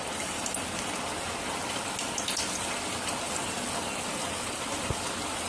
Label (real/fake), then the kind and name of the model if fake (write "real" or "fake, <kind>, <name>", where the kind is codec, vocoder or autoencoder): real